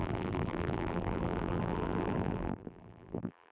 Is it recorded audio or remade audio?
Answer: remade